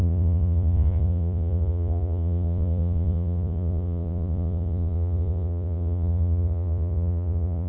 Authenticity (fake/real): fake